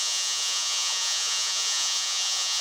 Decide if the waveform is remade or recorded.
remade